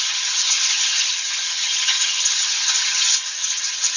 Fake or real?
fake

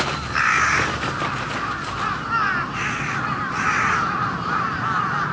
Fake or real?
real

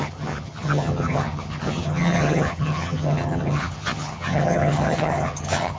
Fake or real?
fake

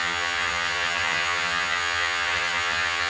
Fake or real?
fake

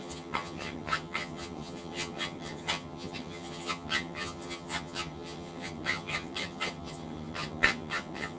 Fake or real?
fake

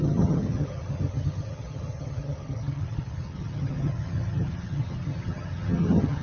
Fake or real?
fake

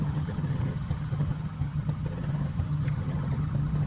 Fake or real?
fake